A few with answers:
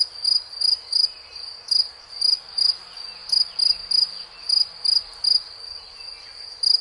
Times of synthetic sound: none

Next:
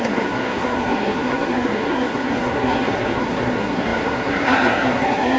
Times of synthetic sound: 0.0-5.4

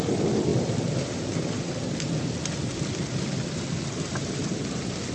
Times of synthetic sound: none

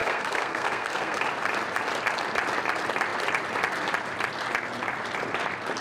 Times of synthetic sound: 0.0-1.2